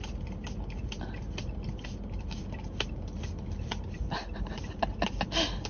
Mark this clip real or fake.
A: real